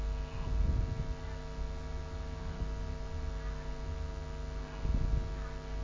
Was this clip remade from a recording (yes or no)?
no